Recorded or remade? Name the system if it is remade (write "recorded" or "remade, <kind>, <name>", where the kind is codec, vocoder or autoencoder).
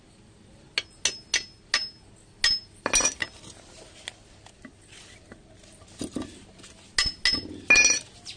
recorded